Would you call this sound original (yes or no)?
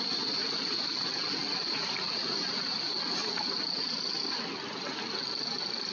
yes